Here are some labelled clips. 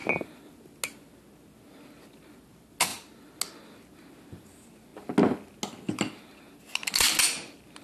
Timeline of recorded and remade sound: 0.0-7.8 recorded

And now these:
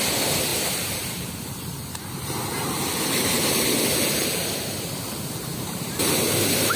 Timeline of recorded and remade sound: 0.0-6.8 remade

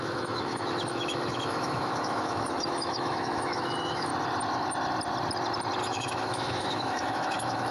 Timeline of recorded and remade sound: 0.0-4.1 remade; 4.1-5.8 recorded; 5.8-7.7 remade

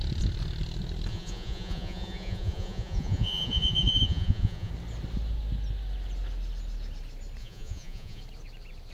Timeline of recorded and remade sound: 0.0-1.1 recorded; 1.1-4.7 remade; 4.7-7.4 recorded; 7.4-8.2 remade; 8.2-8.9 recorded

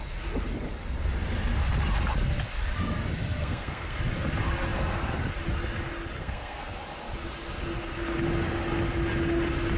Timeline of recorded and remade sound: 0.0-3.4 recorded; 3.4-4.0 remade; 4.0-6.2 recorded; 6.2-6.7 remade; 6.7-9.8 recorded

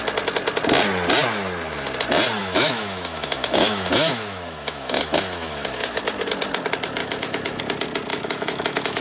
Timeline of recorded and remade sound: 0.0-2.4 recorded; 2.4-6.0 remade; 6.0-7.0 recorded; 7.0-7.6 remade; 7.6-8.1 recorded; 8.1-9.0 remade

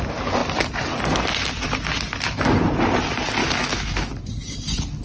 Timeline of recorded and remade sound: 0.0-3.4 recorded; 3.4-4.1 remade; 4.1-5.0 recorded